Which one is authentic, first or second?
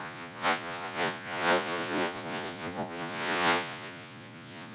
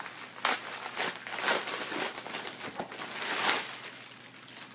second